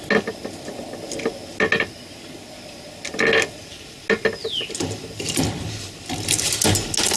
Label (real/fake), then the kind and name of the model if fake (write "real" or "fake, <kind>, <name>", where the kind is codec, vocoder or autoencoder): real